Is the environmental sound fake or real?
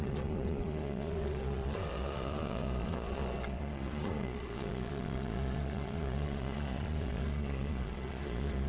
fake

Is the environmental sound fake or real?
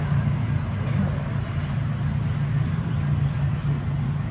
real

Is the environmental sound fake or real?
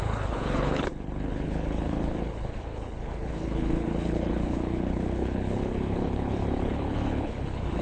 fake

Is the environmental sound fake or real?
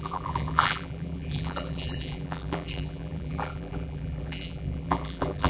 fake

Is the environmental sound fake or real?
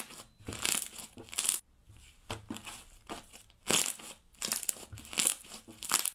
real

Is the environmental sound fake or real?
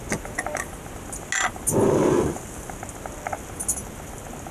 real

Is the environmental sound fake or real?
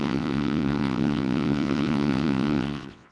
fake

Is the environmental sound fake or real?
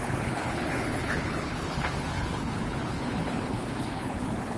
fake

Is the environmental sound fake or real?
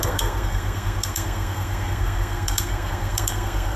fake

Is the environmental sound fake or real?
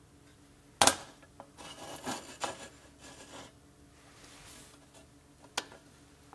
real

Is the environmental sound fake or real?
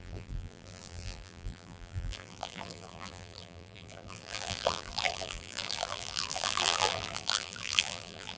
fake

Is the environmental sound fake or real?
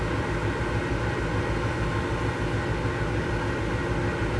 real